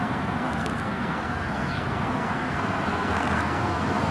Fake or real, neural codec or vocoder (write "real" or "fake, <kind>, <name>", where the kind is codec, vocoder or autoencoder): fake, codec, SNAC